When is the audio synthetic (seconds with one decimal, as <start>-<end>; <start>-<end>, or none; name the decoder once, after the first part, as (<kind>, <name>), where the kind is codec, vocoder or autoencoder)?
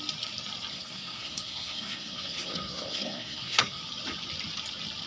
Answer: 0.7-3.8 (codec, SNAC)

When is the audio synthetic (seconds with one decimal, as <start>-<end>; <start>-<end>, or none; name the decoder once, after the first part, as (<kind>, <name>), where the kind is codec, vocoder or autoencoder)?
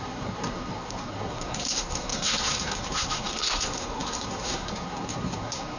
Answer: 0.0-5.8 (codec, SNAC)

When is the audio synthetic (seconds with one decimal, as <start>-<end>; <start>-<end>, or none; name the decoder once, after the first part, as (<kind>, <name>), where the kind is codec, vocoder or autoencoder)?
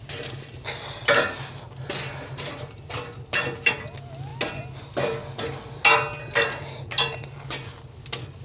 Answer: none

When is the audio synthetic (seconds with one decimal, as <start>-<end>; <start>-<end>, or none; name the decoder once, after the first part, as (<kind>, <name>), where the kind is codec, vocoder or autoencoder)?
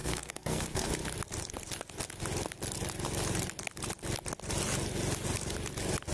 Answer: 0.0-0.9 (codec, SNAC)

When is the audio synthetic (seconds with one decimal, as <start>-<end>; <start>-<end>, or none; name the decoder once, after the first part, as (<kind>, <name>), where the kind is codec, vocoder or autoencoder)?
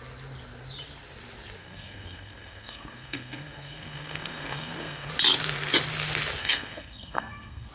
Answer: 1.6-5.1 (codec, SNAC); 6.4-7.7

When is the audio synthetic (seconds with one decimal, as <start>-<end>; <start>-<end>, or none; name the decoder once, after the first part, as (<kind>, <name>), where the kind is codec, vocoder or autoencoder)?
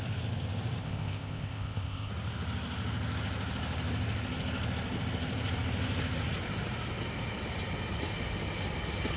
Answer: 0.8-2.1 (codec, ZipCodec)